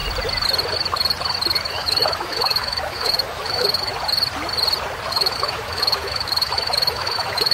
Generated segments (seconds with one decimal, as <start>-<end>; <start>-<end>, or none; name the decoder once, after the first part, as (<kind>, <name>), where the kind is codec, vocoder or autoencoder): 1.7-3.9 (autoencoder, DAC-VAE); 5.1-7.5